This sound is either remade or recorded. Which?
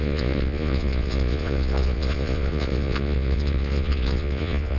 remade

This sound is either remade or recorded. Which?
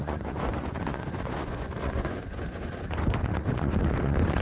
remade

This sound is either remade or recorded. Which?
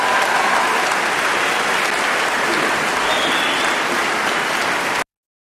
recorded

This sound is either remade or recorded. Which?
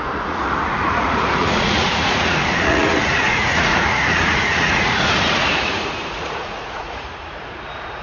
remade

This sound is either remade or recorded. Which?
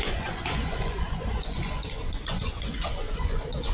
remade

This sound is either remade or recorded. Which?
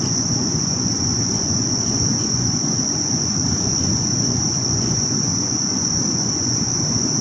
remade